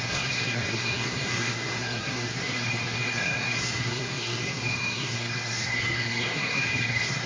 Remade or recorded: remade